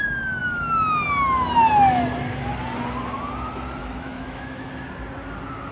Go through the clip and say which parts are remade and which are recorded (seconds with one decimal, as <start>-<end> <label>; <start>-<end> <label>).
0.0-3.8 recorded; 3.8-4.7 remade; 4.7-5.7 recorded